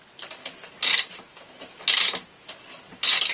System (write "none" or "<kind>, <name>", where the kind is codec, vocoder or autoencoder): none